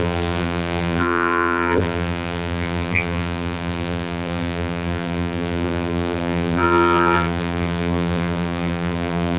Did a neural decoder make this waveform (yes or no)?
yes